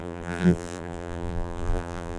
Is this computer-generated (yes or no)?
yes